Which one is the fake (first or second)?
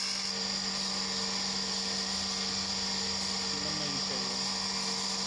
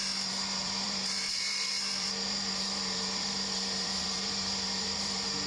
second